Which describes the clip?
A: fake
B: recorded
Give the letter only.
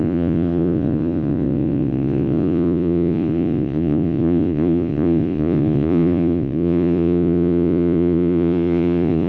A